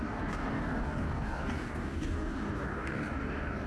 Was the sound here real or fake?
fake